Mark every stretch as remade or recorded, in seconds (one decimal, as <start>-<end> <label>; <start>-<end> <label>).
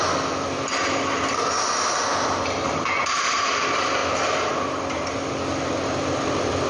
0.0-6.7 recorded